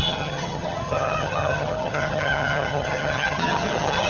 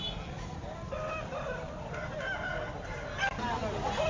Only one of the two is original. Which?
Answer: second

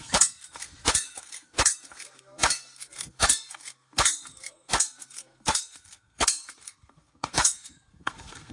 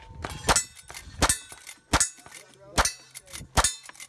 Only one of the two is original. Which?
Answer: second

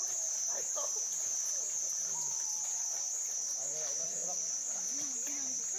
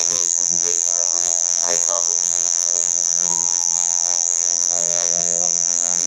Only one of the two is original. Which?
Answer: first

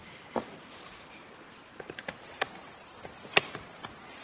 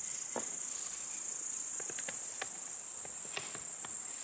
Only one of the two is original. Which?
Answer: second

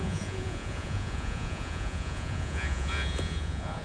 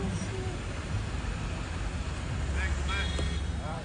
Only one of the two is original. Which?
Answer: second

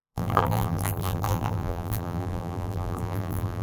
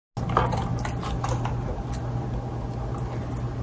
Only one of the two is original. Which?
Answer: second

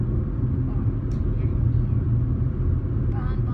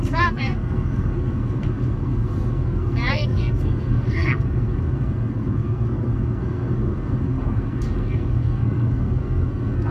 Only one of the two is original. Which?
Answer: first